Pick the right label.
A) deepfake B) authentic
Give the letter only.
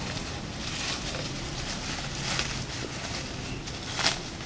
B